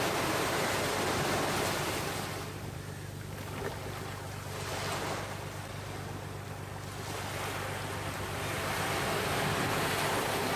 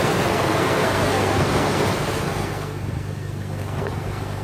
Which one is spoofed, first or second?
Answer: second